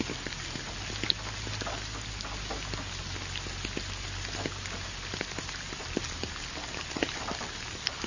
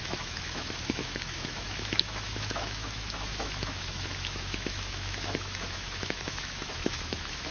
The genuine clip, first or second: first